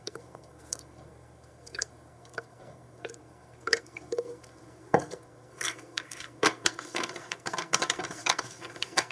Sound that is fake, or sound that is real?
fake